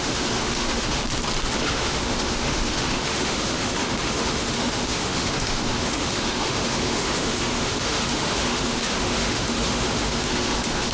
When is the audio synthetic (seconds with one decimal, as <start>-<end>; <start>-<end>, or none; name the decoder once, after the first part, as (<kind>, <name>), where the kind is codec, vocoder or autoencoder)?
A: 0.0-1.0 (autoencoder, DAC-VAE); 1.6-10.9